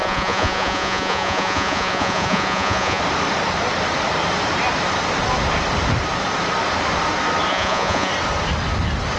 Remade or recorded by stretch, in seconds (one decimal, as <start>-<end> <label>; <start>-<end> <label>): 0.0-3.0 remade; 3.0-7.5 recorded; 7.5-8.1 remade; 8.1-9.2 recorded